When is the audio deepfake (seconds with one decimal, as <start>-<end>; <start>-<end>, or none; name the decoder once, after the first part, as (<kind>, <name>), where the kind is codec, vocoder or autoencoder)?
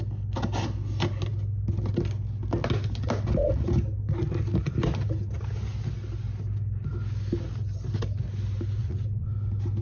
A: 8.8-9.3 (vocoder, Vocos)